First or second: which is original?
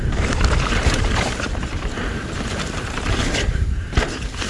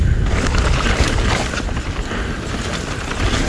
second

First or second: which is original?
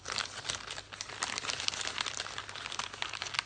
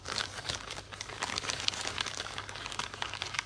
first